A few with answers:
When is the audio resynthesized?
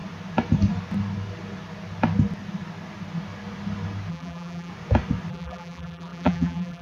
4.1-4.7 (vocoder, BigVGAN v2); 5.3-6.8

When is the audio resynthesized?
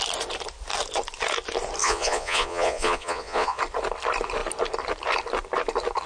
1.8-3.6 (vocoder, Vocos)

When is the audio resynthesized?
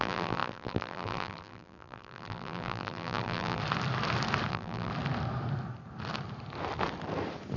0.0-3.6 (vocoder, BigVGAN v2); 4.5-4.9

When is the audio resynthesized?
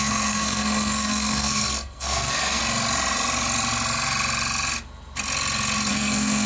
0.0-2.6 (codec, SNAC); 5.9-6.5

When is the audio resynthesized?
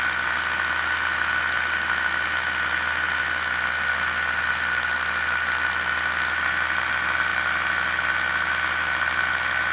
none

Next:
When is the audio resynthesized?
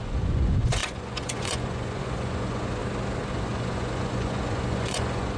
0.0-2.8 (vocoder, Vocos); 3.3-5.4